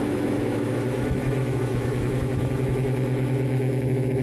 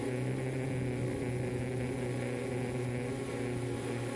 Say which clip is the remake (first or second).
first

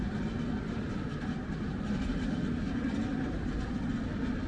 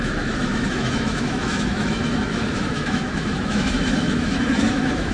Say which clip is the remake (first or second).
second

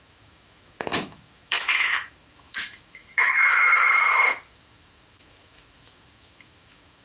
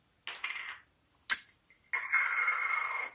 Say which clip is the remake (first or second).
first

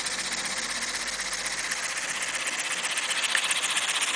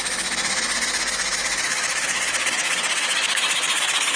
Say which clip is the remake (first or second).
second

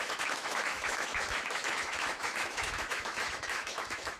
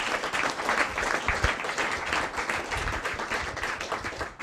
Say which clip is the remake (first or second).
first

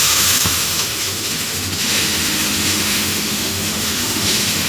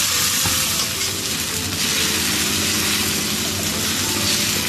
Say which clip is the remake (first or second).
first